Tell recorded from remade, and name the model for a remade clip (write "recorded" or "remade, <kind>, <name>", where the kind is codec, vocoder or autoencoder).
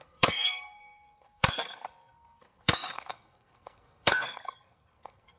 remade, codec, SNAC